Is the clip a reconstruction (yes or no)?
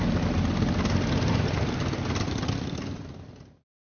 no